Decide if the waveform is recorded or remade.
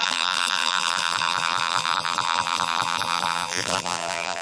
remade